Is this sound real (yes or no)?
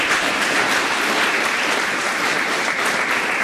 no